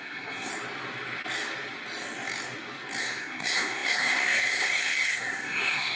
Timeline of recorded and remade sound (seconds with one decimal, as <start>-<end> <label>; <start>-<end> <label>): 0.0-0.5 remade; 0.5-3.0 recorded; 3.0-6.0 remade